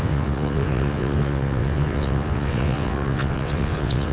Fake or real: fake